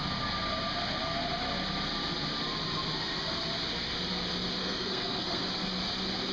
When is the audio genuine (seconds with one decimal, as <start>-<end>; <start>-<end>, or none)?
0.0-4.6; 5.4-6.3